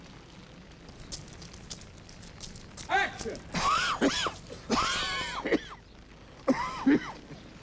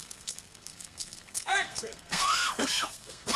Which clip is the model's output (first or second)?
second